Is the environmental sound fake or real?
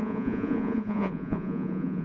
fake